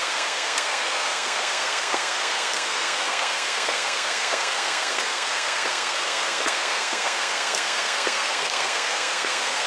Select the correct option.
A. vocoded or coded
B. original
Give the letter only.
A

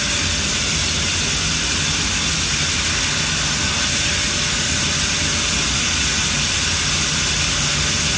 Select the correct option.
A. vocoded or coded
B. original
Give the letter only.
B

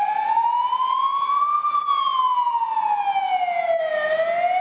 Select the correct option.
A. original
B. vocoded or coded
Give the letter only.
A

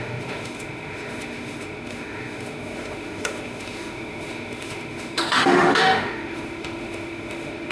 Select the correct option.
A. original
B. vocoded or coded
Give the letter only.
B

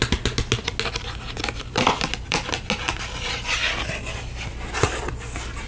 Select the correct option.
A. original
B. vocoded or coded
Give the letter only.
A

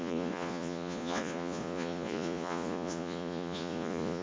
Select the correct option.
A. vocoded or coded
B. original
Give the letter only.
A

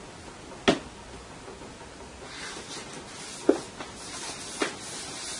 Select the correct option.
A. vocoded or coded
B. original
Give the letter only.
B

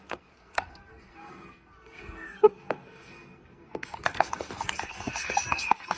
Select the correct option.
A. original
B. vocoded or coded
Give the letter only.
B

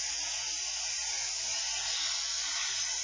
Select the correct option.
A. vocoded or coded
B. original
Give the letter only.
B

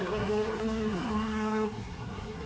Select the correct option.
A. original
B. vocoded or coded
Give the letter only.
B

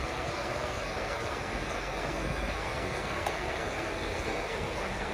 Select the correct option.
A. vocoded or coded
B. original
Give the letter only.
A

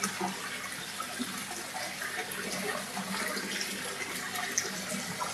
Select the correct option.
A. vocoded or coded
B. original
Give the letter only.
B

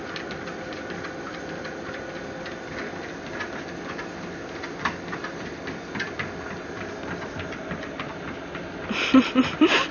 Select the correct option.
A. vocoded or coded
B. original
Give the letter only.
B